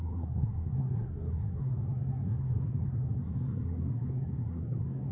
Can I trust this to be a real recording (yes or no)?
no